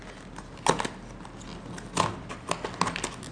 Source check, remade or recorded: recorded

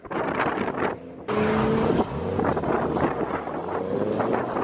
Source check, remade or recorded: recorded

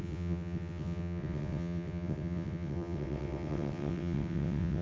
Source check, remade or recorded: remade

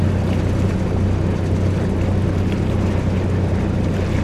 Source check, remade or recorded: recorded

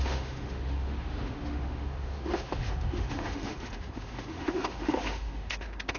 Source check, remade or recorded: remade